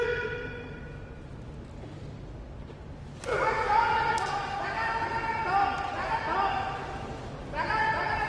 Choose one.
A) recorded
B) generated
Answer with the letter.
A